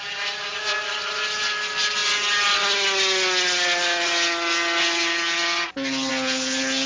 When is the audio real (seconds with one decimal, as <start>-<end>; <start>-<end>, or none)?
0.0-6.9